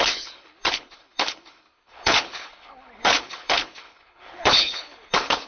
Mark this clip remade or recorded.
remade